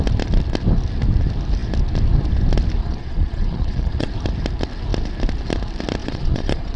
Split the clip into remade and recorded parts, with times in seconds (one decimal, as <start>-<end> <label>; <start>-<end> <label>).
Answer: 0.0-2.8 recorded; 2.8-4.1 remade; 4.1-6.0 recorded; 6.0-6.8 remade